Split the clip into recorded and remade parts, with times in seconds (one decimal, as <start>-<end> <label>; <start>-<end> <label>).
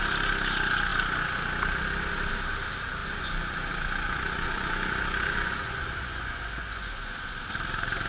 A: 0.0-3.0 recorded; 3.0-7.4 remade; 7.4-8.1 recorded